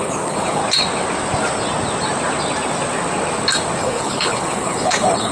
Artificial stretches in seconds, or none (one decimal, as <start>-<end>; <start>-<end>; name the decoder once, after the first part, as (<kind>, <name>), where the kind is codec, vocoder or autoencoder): 0.0-0.6 (codec, HILCodec); 3.8-5.3